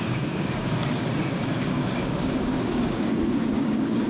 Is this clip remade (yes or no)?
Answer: yes